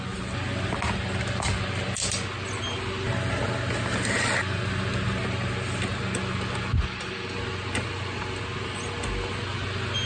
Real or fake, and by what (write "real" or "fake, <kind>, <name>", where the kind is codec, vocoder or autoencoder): real